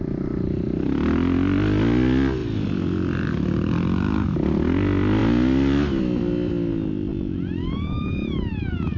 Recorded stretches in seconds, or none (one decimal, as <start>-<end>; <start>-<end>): 0.0-7.1